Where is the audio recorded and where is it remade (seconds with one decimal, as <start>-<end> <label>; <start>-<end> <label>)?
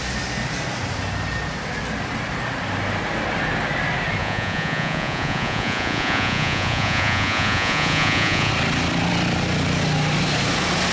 0.0-4.2 recorded; 4.2-8.5 remade; 8.5-10.9 recorded